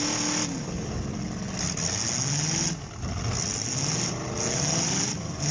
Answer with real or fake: real